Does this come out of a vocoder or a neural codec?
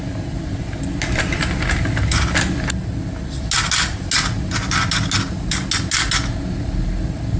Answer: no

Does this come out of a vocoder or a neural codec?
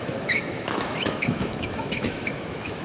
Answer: yes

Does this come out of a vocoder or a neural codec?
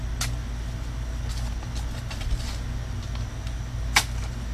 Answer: no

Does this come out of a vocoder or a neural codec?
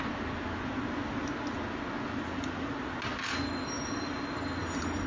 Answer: no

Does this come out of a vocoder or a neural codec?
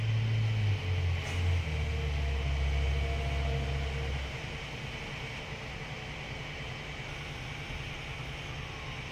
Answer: no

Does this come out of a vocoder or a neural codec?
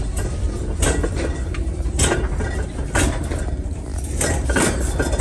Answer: no